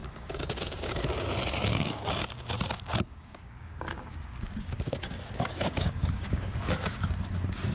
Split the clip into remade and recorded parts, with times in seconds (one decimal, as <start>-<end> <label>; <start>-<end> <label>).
0.0-1.1 remade; 1.1-1.7 recorded; 1.7-2.3 remade; 2.3-3.1 recorded; 3.1-7.0 remade; 7.0-7.7 recorded